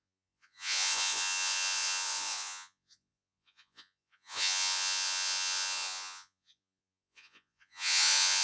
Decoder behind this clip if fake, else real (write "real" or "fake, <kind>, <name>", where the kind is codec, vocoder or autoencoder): fake, vocoder, Vocos